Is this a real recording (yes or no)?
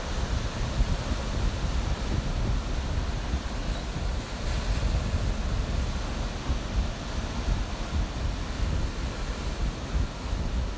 yes